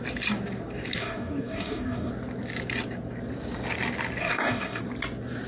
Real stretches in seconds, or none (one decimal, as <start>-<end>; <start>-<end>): 0.0-1.0; 2.1-4.2; 4.8-5.5

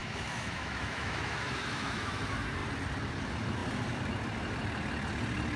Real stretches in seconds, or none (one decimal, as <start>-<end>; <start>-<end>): 2.2-5.6

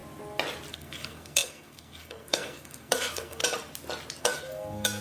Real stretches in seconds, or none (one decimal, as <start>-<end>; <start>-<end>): 0.0-0.7; 3.4-4.2

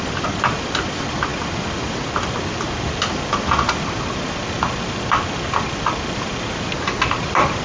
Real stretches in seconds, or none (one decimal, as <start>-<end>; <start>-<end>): 0.0-7.6

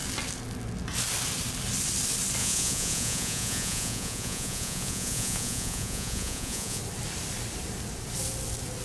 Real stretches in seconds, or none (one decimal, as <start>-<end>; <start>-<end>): 0.0-2.4; 6.8-8.8